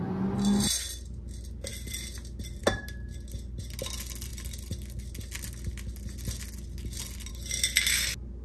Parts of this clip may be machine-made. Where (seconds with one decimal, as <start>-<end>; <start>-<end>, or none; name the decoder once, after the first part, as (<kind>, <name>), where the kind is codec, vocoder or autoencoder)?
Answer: none